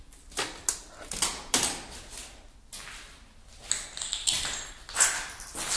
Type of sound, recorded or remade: recorded